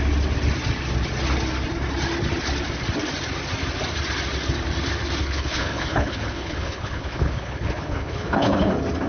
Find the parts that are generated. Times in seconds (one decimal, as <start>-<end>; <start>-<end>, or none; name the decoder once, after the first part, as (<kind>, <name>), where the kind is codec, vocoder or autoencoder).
5.2-8.7 (codec, HILCodec)